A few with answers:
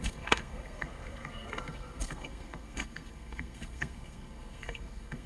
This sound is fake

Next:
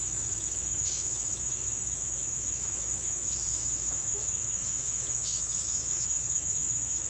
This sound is fake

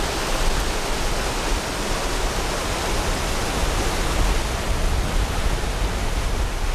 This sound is real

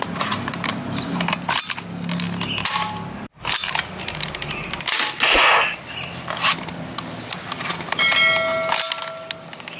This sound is real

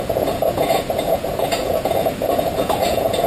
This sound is fake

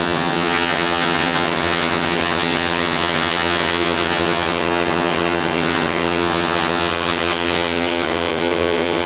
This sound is fake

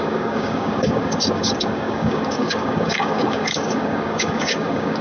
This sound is fake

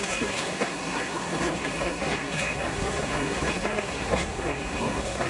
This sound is fake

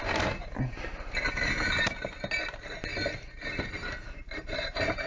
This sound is real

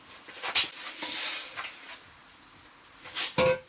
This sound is real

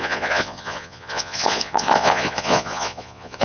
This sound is fake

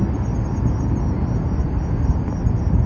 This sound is real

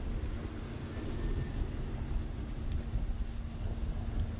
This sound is real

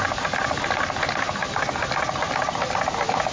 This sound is real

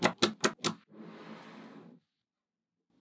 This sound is real